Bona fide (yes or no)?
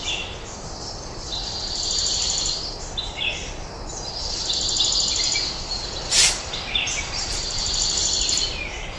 yes